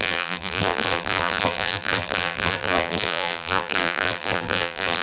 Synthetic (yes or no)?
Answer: yes